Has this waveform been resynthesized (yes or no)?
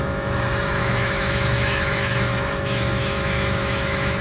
yes